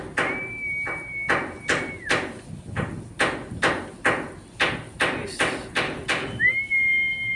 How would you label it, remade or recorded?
recorded